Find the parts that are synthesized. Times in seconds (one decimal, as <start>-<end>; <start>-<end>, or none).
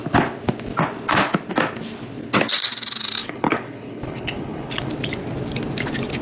3.2-4.9